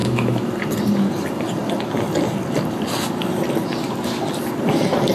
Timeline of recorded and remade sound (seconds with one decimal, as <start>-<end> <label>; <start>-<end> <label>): 0.0-0.5 remade; 0.5-5.1 recorded